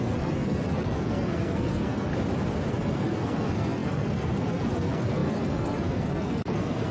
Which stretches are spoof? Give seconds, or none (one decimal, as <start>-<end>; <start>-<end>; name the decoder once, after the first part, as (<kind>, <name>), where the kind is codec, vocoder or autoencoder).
0.0-2.1 (codec, SNAC); 2.7-6.9